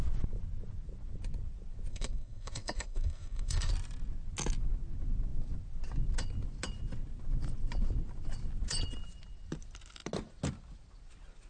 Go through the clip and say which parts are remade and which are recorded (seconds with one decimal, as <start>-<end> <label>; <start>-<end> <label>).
0.0-1.9 recorded; 1.9-3.7 remade; 3.7-11.5 recorded